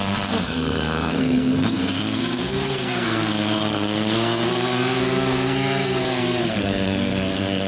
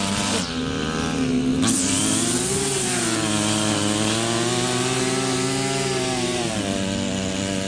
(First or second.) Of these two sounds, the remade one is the first